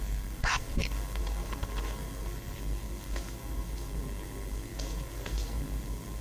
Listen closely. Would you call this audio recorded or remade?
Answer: remade